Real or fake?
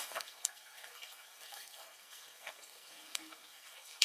fake